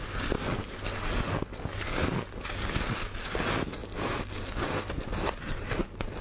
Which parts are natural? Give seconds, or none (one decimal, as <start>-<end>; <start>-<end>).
0.0-6.2